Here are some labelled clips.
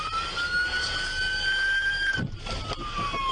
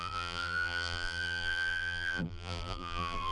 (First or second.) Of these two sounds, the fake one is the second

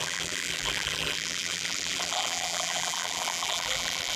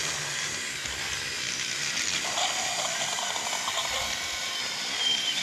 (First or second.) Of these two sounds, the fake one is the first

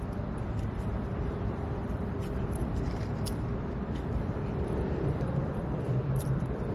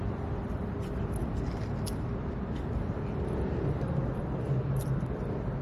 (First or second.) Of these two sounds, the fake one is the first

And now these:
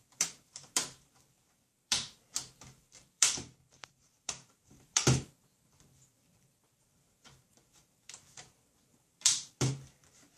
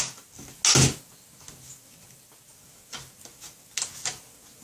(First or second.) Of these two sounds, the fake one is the first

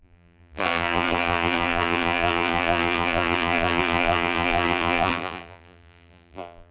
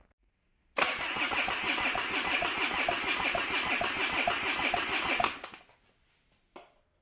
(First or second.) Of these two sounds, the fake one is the first